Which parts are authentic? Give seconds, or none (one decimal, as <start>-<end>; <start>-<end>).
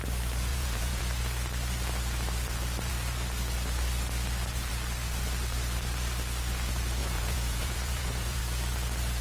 0.0-0.5; 1.0-7.0; 8.4-9.2